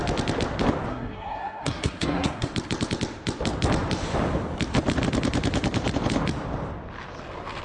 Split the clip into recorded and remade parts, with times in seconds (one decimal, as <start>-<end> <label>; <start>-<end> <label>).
0.0-0.9 recorded; 0.9-2.5 remade; 2.5-7.6 recorded